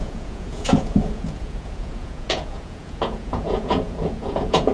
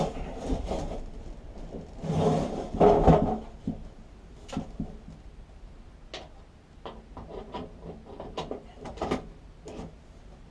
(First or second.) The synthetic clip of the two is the first